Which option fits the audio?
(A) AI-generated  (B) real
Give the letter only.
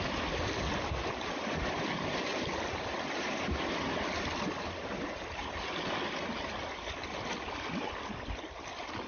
B